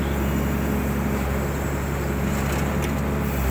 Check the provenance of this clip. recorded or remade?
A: recorded